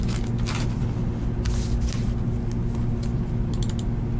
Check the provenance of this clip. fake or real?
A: real